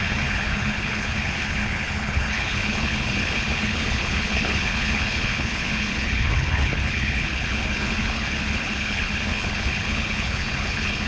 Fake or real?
fake